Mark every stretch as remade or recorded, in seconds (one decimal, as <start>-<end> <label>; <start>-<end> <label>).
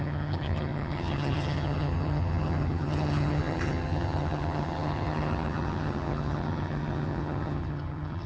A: 0.0-8.3 remade